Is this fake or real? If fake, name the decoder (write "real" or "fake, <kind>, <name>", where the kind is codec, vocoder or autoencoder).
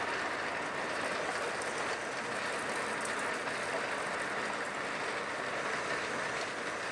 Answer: real